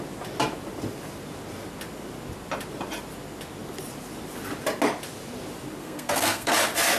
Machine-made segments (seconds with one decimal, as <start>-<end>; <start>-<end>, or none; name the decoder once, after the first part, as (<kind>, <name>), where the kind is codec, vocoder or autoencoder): 5.8-6.5 (codec, SNAC)